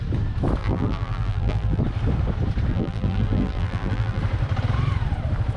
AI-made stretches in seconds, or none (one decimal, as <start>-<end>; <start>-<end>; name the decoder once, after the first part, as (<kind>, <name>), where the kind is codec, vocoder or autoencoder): 0.6-1.8 (vocoder, BigVGAN v2); 2.7-4.2

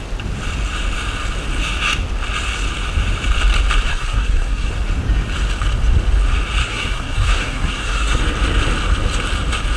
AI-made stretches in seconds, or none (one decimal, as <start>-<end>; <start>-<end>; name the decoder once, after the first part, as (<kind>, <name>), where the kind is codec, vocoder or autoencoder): 3.9-4.7 (codec, SNAC); 6.6-8.2

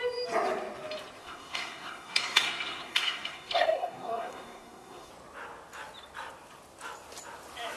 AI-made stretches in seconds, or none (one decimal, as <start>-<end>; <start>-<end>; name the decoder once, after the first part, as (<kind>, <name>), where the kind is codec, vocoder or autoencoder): 1.2-5.1 (codec, SNAC)

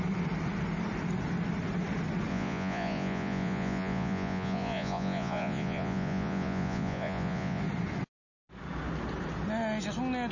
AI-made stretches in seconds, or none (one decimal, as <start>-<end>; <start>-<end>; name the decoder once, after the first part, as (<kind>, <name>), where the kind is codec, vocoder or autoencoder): 2.3-7.6 (vocoder, Vocos)

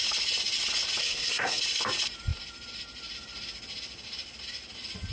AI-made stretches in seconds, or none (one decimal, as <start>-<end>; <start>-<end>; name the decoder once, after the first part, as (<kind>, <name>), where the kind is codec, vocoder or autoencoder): 1.0-1.6 (codec, SNAC)